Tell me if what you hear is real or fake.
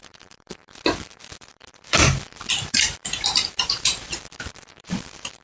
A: fake